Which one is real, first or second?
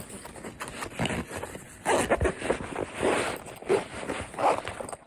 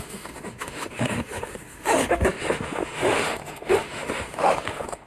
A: first